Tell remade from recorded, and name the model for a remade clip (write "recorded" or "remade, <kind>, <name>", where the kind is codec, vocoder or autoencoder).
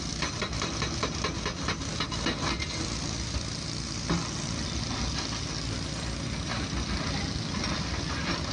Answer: recorded